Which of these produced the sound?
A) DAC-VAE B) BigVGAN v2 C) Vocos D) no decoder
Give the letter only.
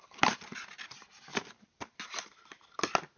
D